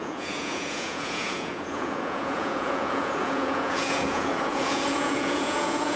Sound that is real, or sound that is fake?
fake